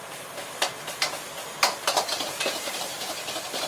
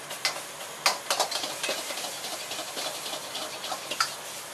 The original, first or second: second